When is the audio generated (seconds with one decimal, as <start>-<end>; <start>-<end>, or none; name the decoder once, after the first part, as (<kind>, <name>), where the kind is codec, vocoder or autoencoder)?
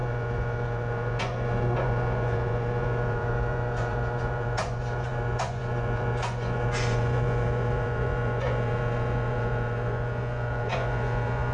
0.0-11.5 (vocoder, Vocos)